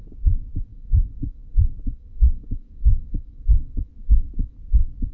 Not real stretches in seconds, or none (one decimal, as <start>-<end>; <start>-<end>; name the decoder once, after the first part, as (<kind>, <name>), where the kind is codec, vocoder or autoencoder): 0.7-3.8 (codec, DAC)